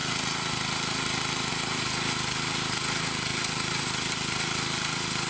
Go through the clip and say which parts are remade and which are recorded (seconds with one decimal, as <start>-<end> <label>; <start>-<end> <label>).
0.0-1.5 remade; 1.5-3.3 recorded; 3.3-5.3 remade